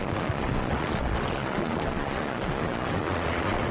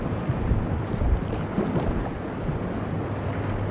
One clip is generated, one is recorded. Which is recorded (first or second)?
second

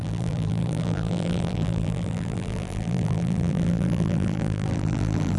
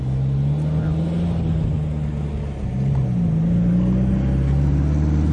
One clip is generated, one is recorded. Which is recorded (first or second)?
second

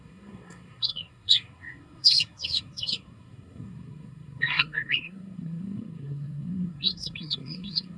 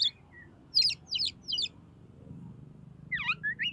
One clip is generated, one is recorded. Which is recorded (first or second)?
second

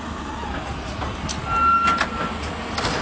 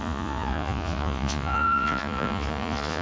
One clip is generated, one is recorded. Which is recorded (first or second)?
first